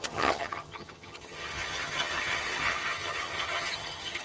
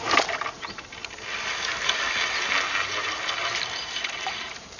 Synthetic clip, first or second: first